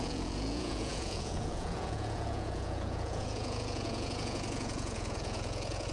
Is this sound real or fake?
fake